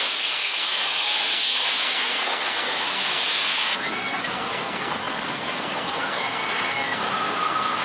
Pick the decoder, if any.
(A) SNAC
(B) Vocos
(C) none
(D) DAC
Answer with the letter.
A